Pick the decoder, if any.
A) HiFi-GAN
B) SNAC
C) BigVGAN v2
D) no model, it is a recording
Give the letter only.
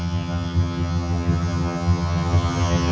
A